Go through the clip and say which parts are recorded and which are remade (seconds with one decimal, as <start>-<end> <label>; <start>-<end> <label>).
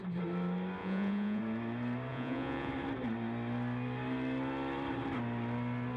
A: 0.0-0.8 recorded; 0.8-1.4 remade; 1.4-2.1 recorded; 2.1-2.7 remade; 2.7-6.0 recorded